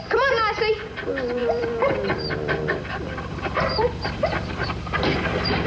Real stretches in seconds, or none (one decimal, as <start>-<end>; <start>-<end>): 0.0-1.4; 4.8-5.7